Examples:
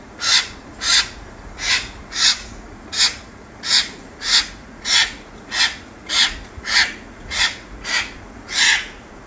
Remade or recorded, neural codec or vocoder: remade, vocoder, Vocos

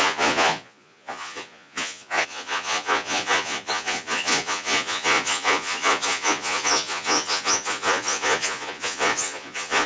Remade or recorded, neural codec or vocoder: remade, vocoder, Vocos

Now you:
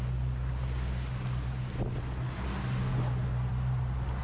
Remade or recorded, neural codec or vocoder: recorded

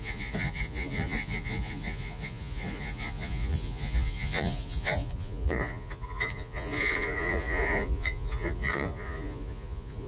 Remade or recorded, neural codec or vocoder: remade, vocoder, Vocos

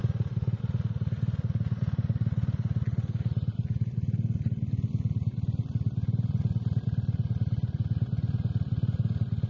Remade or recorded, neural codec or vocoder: recorded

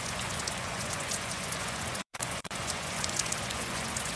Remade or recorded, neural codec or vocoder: remade, vocoder, Vocos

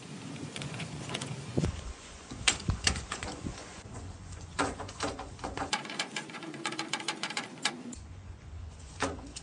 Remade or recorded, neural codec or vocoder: remade, vocoder, Vocos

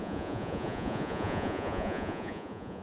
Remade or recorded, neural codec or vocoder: remade, vocoder, Vocos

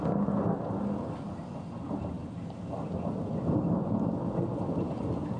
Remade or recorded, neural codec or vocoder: recorded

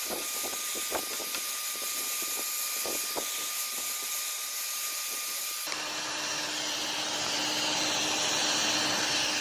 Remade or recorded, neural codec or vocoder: recorded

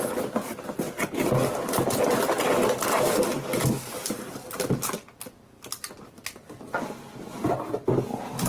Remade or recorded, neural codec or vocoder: recorded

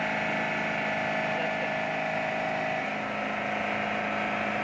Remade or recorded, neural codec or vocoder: recorded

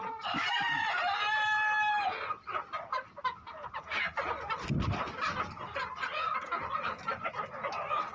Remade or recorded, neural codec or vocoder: recorded